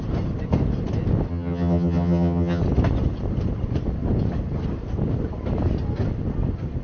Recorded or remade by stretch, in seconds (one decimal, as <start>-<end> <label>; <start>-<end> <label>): 0.0-1.3 recorded; 1.3-2.6 remade; 2.6-6.8 recorded